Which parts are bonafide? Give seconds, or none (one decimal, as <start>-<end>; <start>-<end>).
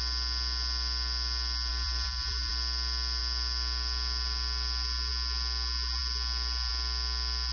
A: 0.0-1.7; 2.5-7.5